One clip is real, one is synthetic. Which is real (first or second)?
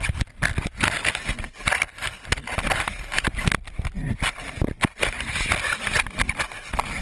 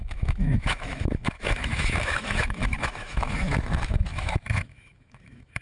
first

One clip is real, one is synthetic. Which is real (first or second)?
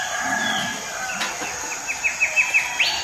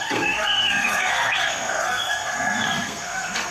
first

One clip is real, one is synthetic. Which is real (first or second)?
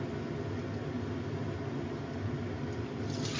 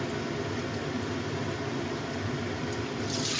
first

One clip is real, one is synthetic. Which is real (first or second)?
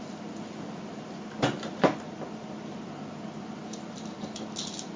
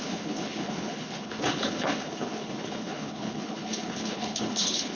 first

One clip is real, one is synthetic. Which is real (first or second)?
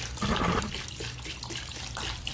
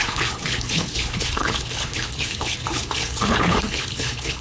first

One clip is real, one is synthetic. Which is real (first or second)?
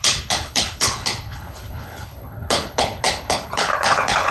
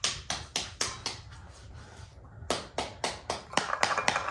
second